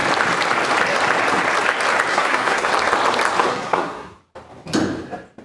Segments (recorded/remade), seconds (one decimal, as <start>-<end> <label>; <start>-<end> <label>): 0.0-2.1 recorded; 2.1-2.7 remade; 2.7-3.5 recorded; 3.5-4.2 remade; 4.2-5.4 recorded